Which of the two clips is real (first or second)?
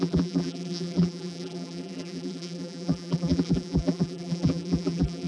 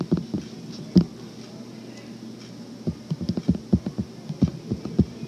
second